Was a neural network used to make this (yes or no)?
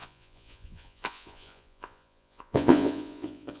yes